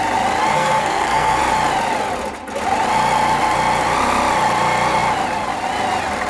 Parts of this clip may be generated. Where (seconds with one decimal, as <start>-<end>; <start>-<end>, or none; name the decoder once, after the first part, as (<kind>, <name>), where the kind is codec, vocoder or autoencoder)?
0.5-1.4 (codec, SNAC)